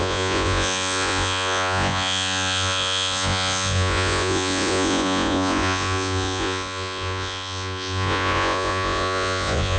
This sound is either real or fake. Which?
fake